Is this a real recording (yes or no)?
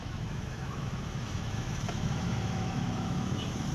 no